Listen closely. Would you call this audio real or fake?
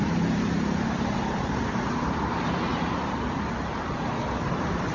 fake